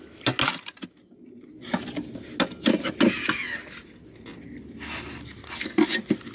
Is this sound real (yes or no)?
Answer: yes